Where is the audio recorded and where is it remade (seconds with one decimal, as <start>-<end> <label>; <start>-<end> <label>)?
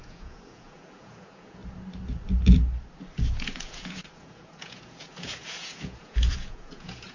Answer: 0.0-1.6 remade; 1.6-3.3 recorded; 3.3-7.1 remade